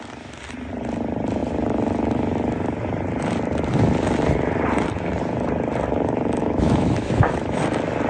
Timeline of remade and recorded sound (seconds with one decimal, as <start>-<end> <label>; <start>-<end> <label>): 0.0-6.4 recorded; 6.4-7.6 remade; 7.6-8.1 recorded